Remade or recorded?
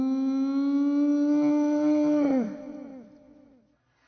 recorded